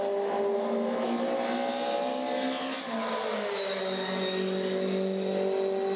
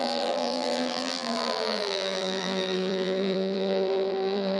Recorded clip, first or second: first